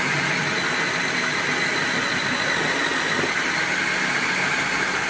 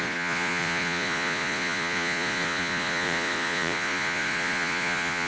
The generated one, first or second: second